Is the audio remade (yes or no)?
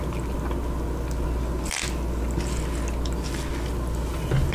no